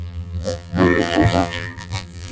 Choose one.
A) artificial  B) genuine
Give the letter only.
A